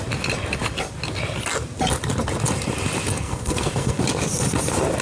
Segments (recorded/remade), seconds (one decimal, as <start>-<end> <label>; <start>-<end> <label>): 0.0-3.1 recorded; 3.1-4.0 remade; 4.0-5.0 recorded